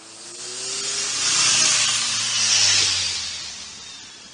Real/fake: real